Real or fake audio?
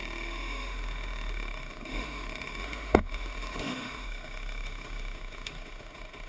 fake